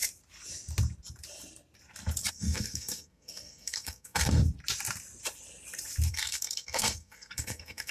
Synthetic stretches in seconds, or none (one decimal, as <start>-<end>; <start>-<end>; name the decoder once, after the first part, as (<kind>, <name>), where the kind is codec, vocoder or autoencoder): 2.3-4.4 (codec, SNAC); 6.1-7.9